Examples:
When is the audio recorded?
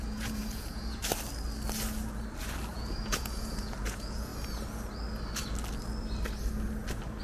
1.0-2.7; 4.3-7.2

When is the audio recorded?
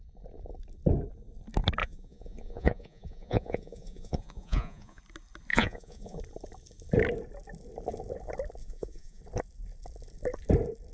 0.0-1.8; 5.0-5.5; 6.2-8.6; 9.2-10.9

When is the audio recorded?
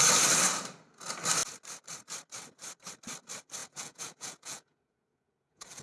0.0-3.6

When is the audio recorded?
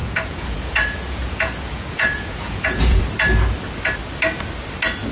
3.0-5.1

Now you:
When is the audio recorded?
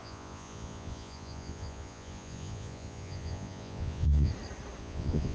4.3-4.8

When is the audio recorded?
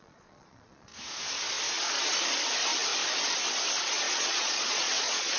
0.9-4.1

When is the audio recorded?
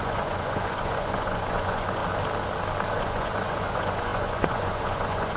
2.0-2.9